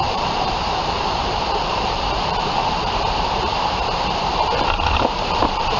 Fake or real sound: fake